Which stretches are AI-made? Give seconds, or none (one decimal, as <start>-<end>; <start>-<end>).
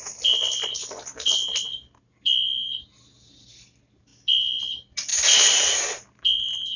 none